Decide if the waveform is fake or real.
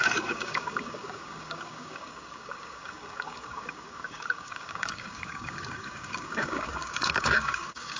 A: fake